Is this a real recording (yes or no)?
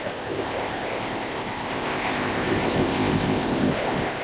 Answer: no